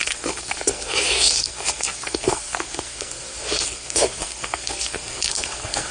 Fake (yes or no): yes